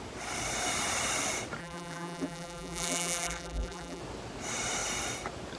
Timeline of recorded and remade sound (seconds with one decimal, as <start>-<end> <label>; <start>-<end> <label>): 0.0-1.6 recorded; 1.6-4.0 remade; 4.0-5.6 recorded